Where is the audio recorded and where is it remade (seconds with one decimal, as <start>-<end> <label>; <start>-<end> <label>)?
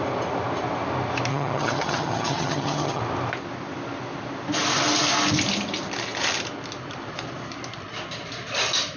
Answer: 0.0-1.3 recorded; 1.3-3.0 remade; 3.0-9.0 recorded